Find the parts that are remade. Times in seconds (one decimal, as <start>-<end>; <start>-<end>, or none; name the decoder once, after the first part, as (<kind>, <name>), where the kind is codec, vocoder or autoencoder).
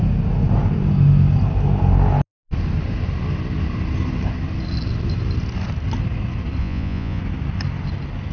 6.6-7.2 (vocoder, Vocos)